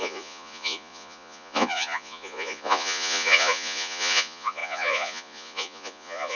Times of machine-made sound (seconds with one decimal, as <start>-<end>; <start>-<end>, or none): 0.0-6.3